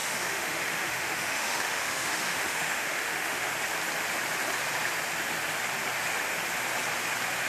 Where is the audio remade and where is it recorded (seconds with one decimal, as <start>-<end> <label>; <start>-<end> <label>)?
0.0-3.5 remade; 3.5-7.5 recorded